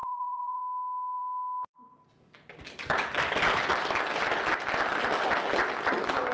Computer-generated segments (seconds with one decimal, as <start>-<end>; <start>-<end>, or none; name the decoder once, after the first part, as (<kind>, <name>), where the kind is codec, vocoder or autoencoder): 0.0-0.6 (vocoder, Vocos)